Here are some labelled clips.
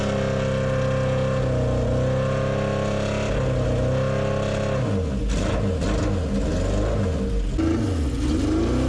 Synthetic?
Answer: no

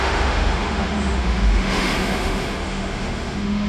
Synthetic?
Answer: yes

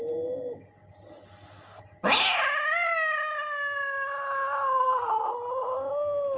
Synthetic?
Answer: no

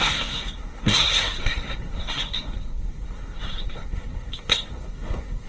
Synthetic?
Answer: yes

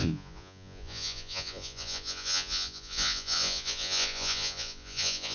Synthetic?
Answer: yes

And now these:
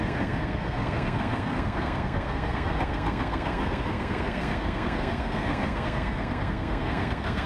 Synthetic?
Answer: yes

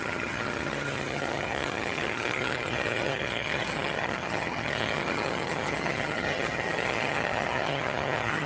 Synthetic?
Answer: yes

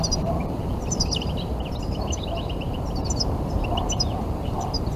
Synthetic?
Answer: yes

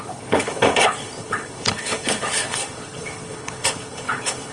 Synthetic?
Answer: yes